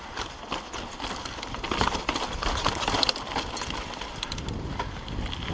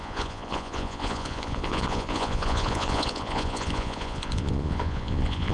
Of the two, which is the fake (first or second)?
second